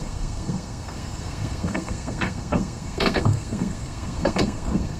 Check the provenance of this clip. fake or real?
fake